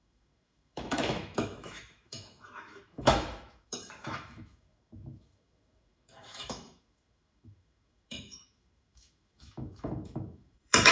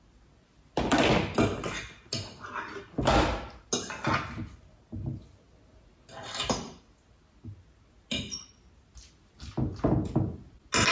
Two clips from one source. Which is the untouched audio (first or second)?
second